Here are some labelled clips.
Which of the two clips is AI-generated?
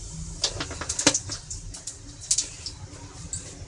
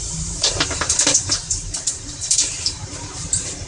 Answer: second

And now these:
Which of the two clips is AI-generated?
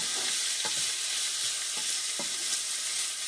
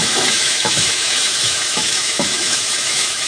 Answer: second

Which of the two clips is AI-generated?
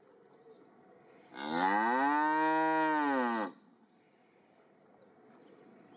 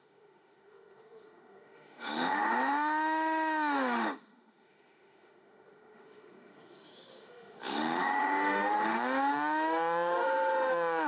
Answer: second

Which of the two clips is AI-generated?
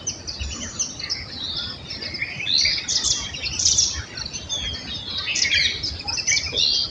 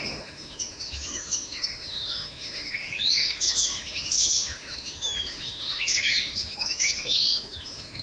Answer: second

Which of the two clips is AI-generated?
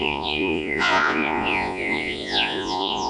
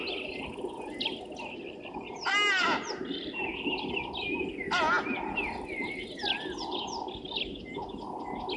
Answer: first